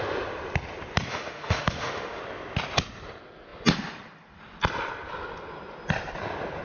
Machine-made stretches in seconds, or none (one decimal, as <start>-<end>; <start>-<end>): 1.1-2.2